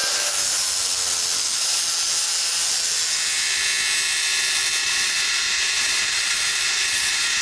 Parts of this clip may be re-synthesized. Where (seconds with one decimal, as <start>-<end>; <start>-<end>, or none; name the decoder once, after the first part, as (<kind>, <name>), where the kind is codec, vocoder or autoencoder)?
4.8-7.4 (vocoder, Vocos)